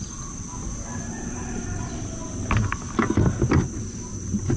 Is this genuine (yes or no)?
yes